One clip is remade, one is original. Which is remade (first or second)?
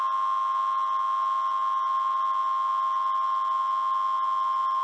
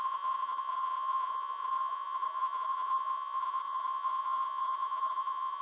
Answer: second